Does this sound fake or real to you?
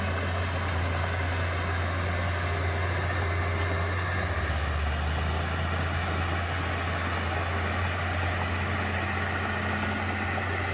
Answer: real